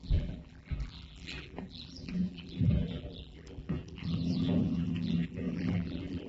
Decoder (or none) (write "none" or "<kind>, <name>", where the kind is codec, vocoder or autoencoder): vocoder, BigVGAN v2